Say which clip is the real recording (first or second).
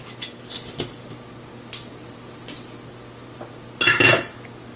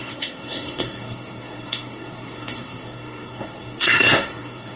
first